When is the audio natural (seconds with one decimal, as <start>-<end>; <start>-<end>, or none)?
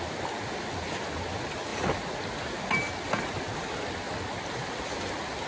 0.0-5.5